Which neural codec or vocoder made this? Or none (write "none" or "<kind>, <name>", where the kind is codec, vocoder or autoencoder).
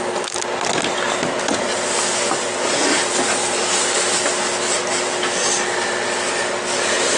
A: none